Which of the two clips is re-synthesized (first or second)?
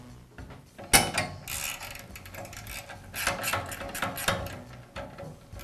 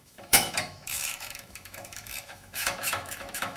second